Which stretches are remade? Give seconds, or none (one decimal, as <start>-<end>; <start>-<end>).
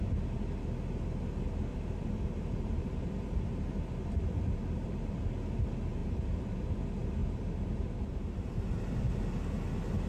1.7-5.3; 6.0-6.8; 7.2-9.0